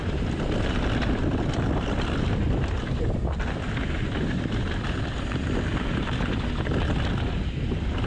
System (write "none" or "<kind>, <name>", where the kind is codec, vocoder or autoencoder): none